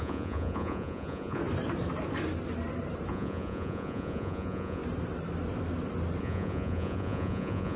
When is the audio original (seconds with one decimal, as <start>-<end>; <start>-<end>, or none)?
1.4-3.1; 4.8-6.2